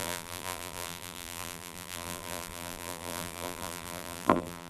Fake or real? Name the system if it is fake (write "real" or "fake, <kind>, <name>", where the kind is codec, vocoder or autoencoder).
fake, vocoder, BigVGAN v2